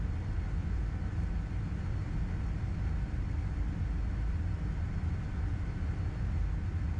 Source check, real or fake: real